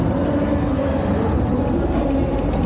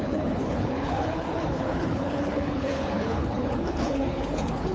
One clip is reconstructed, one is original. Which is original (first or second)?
first